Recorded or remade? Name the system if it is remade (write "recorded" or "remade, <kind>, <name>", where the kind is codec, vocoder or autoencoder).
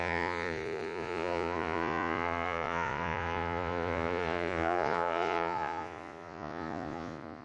remade, vocoder, Vocos